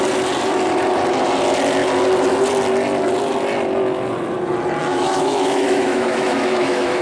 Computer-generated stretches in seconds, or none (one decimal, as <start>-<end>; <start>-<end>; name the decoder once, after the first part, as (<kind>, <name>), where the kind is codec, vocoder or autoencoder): 4.8-7.0 (autoencoder, DAC-VAE)